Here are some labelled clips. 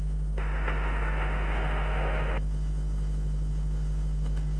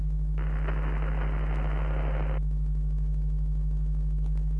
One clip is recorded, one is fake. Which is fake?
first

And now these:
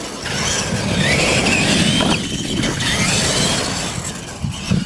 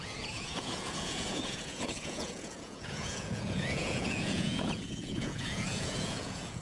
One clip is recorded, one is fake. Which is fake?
second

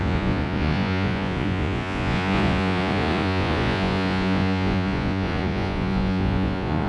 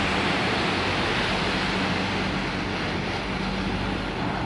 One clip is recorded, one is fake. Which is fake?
first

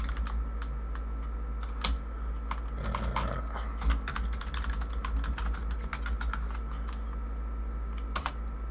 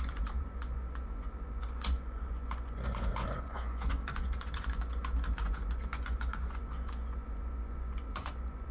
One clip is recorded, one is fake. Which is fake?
second